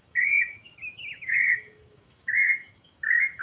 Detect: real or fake fake